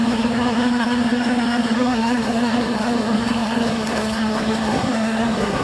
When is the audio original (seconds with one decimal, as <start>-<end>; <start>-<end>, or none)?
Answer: none